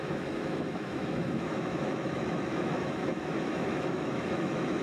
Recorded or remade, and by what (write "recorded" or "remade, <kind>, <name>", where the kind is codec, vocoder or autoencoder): remade, autoencoder, DAC-VAE